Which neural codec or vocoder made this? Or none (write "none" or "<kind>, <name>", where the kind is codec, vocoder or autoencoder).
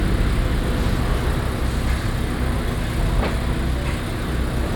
none